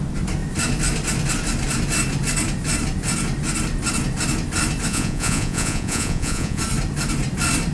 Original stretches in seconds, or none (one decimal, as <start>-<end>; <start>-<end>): 0.0-4.9; 6.6-7.7